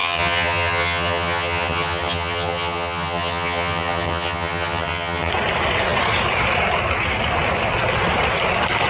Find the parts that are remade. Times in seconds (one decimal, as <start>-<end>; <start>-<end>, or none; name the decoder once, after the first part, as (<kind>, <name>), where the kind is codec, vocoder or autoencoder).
0.0-5.3 (vocoder, HiFi-GAN)